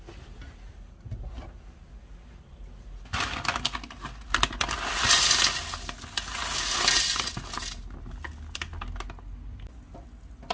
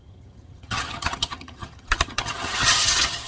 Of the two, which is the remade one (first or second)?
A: second